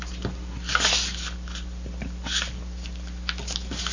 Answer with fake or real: real